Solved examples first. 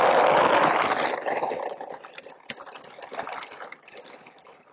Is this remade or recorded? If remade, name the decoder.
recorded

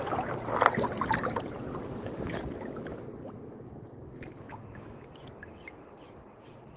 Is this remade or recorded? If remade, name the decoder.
recorded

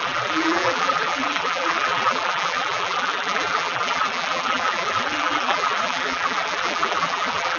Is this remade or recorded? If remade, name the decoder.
remade, vocoder, BigVGAN v2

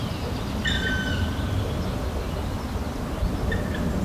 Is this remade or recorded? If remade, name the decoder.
recorded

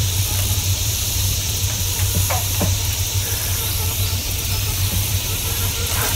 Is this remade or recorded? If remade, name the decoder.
remade, vocoder, BigVGAN v2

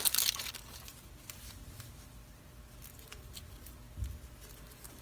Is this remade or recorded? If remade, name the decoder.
recorded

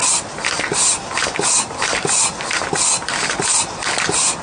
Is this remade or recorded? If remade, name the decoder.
recorded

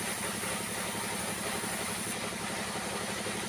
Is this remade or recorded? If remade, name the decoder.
remade, vocoder, BigVGAN v2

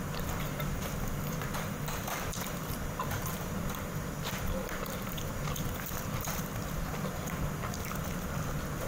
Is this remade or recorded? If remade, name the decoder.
remade, vocoder, BigVGAN v2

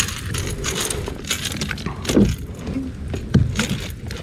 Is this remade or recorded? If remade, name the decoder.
recorded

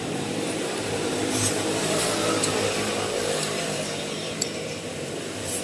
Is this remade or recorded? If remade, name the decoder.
remade, vocoder, BigVGAN v2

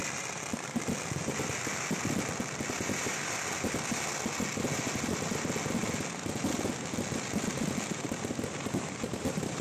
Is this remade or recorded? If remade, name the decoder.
recorded